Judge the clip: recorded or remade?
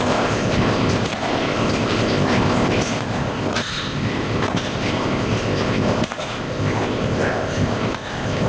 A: remade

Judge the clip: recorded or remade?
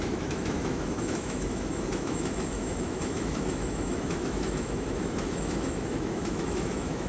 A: remade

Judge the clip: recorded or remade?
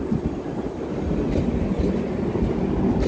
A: recorded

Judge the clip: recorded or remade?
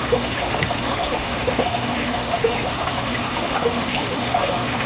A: remade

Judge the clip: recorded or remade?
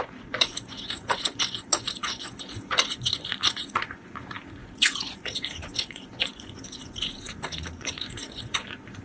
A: remade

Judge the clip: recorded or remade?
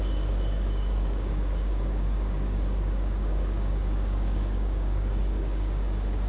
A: remade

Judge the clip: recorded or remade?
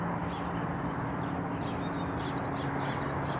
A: recorded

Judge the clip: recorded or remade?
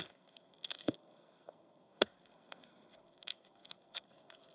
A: remade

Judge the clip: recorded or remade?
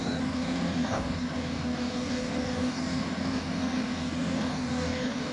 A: remade